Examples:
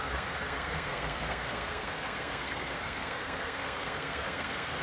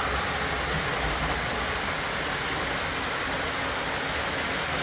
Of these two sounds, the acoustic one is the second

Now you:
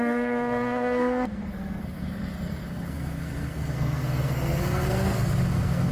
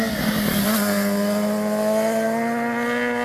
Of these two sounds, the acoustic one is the second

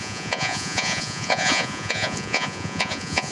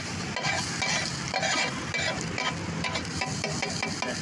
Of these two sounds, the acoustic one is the second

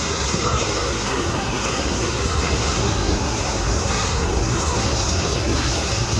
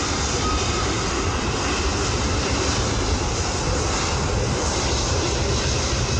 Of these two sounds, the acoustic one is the second